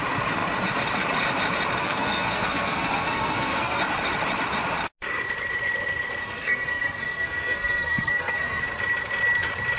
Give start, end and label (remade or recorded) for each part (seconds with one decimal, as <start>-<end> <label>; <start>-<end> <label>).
0.0-1.8 recorded; 1.8-3.8 remade; 3.8-6.2 recorded; 6.2-8.6 remade; 8.6-9.8 recorded